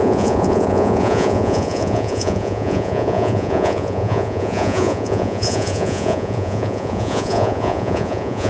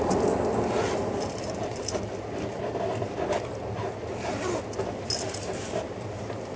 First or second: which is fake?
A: first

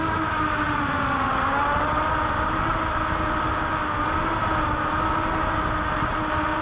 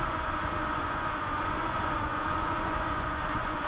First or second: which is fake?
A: second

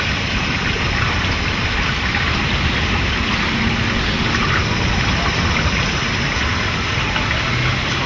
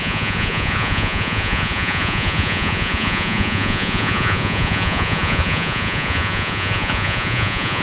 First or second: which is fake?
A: second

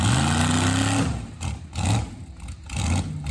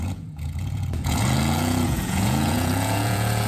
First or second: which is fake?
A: second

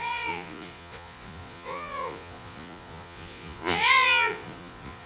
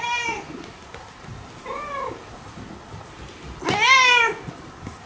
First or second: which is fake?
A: first